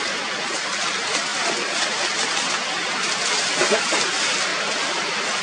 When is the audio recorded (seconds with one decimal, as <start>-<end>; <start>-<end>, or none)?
0.0-5.4